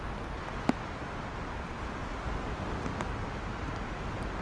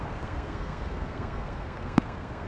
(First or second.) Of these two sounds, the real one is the first